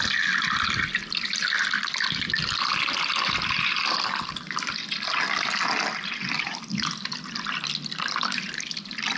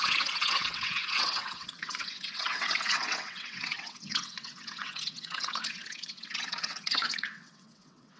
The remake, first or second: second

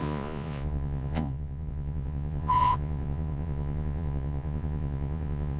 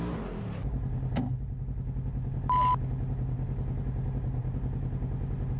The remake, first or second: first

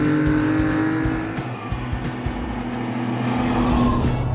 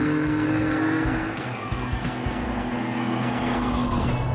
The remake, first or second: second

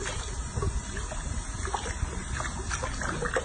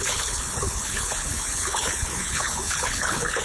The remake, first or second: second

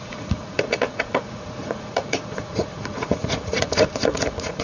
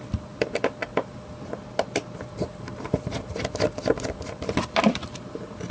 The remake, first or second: first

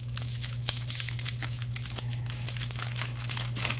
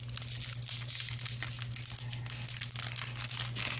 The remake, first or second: first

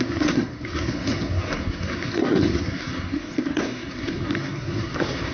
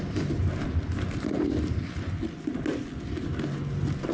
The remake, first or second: first